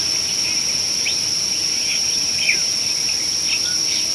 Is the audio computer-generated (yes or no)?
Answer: no